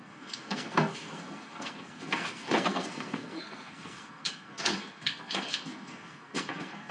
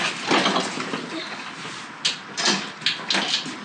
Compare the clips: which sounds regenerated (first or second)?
first